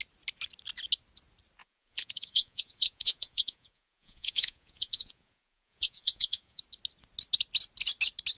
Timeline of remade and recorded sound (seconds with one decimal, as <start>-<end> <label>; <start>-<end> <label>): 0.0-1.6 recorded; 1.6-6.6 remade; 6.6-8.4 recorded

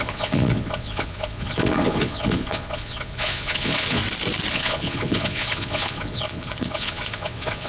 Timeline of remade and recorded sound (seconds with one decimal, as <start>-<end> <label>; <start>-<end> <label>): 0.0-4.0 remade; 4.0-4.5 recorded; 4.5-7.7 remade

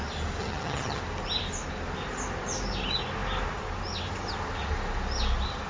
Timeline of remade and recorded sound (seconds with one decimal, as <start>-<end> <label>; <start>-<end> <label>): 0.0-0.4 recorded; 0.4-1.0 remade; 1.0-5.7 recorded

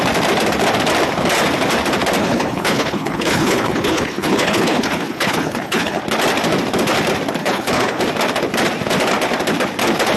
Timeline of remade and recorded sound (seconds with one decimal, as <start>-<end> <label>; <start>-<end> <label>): 0.0-2.2 recorded; 2.2-6.0 remade; 6.0-7.4 recorded; 7.4-8.0 remade; 8.0-10.2 recorded

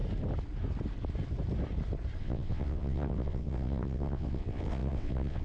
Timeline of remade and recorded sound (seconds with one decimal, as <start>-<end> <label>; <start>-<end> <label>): 0.0-2.2 recorded; 2.2-5.4 remade

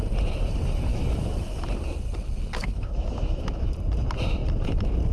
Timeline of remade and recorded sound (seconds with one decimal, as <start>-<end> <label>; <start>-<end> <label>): 0.0-0.9 recorded; 0.9-1.6 remade; 1.6-2.6 recorded; 2.6-3.7 remade; 3.7-5.1 recorded

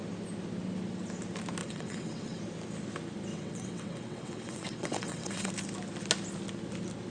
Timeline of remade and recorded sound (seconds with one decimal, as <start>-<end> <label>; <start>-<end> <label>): 0.0-1.6 recorded; 1.6-2.4 remade; 2.4-3.3 recorded; 3.3-5.5 remade; 5.5-7.1 recorded